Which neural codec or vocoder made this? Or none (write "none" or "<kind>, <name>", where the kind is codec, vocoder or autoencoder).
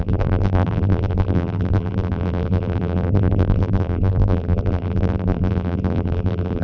vocoder, BigVGAN v2